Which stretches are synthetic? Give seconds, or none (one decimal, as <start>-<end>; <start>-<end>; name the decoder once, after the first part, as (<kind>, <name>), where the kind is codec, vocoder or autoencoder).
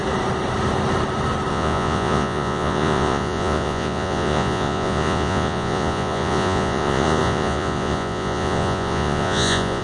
1.5-9.8 (vocoder, Vocos)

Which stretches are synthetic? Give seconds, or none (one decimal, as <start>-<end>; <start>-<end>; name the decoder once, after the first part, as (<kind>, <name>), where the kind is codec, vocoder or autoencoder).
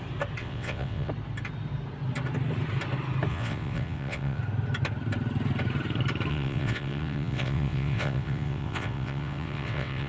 0.4-1.1 (vocoder, WaveNeXt); 3.3-4.4; 6.3-10.1